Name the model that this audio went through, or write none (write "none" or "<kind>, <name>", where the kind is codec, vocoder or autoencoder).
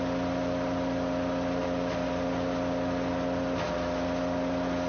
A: none